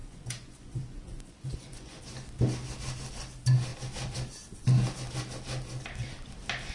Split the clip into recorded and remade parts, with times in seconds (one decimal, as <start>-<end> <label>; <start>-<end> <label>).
0.0-2.0 remade; 2.0-6.7 recorded